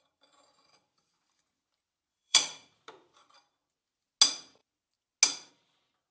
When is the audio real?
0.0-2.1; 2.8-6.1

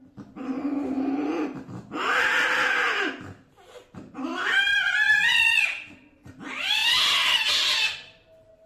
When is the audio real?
0.0-8.7

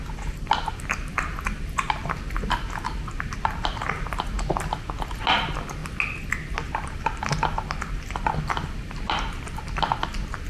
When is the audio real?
0.0-10.5

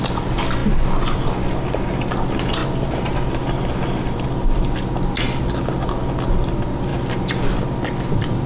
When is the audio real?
0.0-8.5

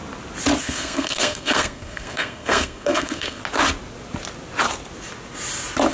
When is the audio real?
0.0-0.6; 3.4-5.9

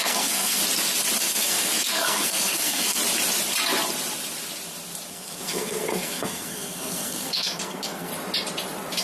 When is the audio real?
0.6-1.2; 3.0-5.1; 8.1-9.0